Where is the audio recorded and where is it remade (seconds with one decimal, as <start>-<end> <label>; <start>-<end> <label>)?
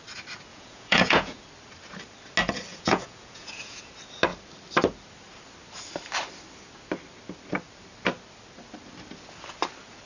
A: 0.0-0.5 recorded; 0.5-1.4 remade; 1.4-2.7 recorded; 2.7-3.9 remade; 3.9-10.1 recorded